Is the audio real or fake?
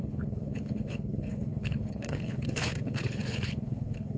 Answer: fake